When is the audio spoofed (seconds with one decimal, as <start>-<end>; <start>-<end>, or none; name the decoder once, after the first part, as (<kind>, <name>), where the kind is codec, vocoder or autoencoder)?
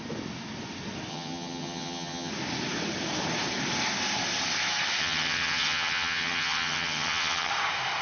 1.1-2.3 (vocoder, HiFi-GAN); 5.0-7.5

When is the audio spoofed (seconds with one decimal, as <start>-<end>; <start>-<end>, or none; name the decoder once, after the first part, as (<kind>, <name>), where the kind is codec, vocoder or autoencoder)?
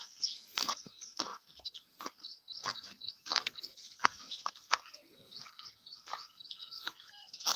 0.0-7.6 (codec, SNAC)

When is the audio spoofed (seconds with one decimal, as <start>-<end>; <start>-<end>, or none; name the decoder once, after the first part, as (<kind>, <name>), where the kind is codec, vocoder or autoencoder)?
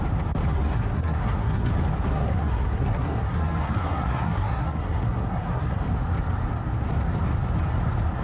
0.5-1.7 (codec, SNAC); 2.1-5.8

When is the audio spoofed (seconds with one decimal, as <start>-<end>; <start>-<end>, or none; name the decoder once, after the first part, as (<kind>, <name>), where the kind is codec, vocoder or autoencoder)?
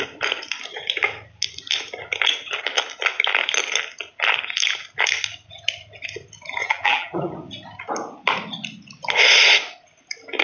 6.6-7.3 (vocoder, BigVGAN v2)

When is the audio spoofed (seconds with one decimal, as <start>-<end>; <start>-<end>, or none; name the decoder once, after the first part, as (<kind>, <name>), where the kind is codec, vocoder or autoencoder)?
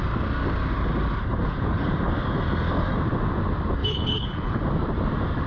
3.8-4.6 (codec, HILCodec)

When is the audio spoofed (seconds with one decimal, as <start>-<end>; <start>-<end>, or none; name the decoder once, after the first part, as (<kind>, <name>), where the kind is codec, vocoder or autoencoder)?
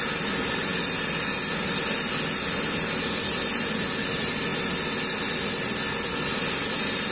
none